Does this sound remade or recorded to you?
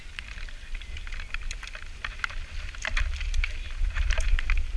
recorded